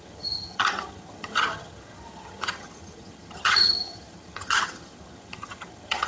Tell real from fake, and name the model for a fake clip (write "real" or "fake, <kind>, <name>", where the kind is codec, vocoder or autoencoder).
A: fake, vocoder, HiFi-GAN